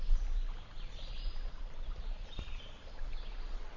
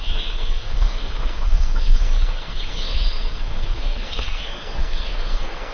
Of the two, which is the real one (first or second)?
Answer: first